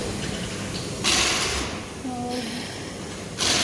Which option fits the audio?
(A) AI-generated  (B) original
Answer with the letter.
B